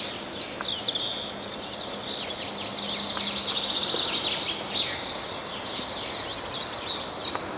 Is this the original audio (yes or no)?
yes